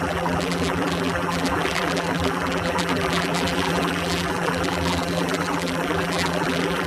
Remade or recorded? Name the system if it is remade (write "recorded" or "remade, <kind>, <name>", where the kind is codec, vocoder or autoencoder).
remade, vocoder, BigVGAN v2